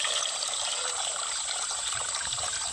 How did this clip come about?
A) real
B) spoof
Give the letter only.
B